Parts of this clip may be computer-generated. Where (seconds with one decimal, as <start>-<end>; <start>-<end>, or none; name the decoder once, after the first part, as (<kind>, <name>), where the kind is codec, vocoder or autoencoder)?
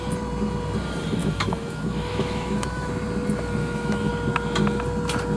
1.2-2.9 (autoencoder, DAC-VAE); 3.6-4.1